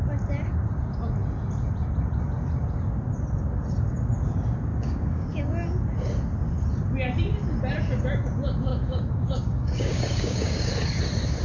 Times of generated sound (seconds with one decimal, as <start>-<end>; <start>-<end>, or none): 4.7-5.3; 8.7-10.7